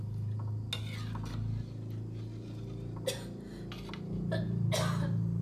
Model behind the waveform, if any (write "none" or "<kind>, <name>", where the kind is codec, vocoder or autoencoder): none